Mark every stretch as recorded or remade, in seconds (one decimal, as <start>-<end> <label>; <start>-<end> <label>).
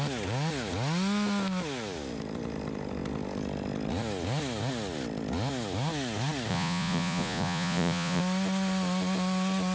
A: 0.0-6.5 recorded; 6.5-8.2 remade; 8.2-9.7 recorded